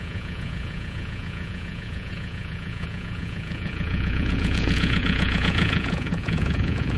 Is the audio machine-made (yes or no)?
yes